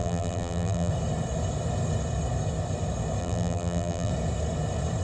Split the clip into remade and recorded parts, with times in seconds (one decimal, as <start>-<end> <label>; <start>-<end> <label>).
0.0-0.9 remade; 0.9-3.2 recorded; 3.2-4.1 remade; 4.1-5.0 recorded